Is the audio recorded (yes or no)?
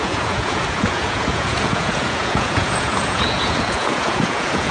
no